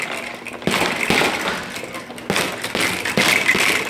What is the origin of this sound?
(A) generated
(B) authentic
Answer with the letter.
B